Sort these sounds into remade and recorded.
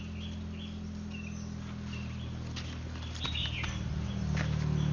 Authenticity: recorded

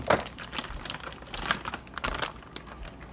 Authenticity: recorded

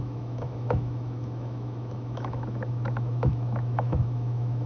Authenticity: remade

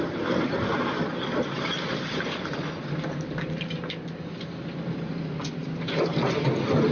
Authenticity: recorded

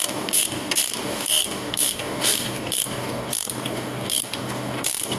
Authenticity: remade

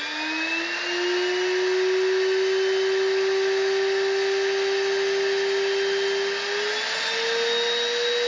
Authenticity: recorded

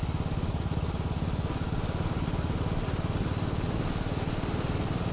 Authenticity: recorded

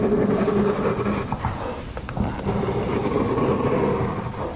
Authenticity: recorded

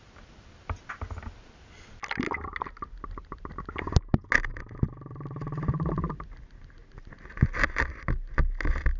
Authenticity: recorded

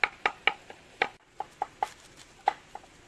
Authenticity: recorded